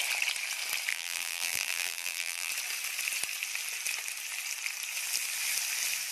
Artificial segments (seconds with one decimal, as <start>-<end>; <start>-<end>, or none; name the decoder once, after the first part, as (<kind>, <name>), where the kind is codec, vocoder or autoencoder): 0.9-2.5 (vocoder, BigVGAN v2)